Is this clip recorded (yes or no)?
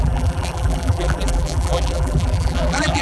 no